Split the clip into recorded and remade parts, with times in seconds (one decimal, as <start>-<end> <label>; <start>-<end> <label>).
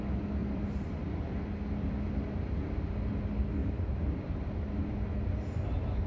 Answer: 0.0-0.4 recorded; 0.4-1.0 remade; 1.0-3.6 recorded; 3.6-4.5 remade; 4.5-6.1 recorded